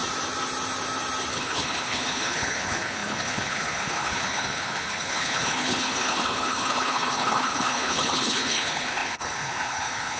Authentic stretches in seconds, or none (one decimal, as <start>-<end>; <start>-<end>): 0.0-1.3